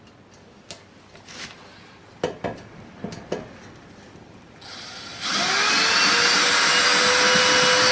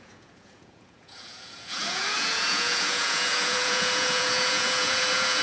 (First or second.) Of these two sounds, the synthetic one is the second